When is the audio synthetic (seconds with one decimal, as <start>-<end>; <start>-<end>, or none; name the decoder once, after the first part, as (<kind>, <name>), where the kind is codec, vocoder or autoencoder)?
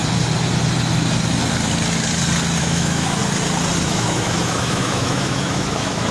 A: 2.6-3.2 (autoencoder, DAC-VAE); 3.8-6.1